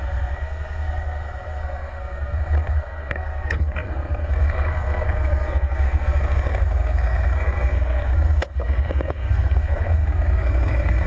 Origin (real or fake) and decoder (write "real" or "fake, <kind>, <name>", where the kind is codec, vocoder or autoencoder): fake, codec, SNAC